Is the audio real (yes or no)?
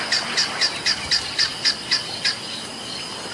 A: yes